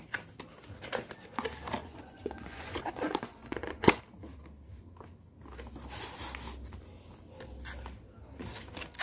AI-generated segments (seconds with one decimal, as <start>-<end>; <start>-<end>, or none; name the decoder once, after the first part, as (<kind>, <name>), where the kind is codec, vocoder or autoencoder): 1.8-4.0 (vocoder, Vocos)